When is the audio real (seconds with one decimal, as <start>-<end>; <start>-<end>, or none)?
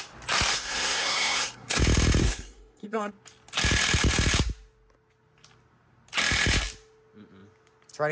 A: 0.0-0.5; 1.8-2.2; 3.1-8.1